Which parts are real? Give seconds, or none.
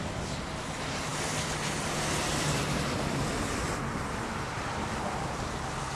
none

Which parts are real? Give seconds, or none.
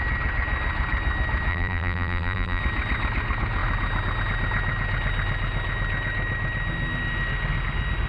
0.0-1.5; 2.6-8.1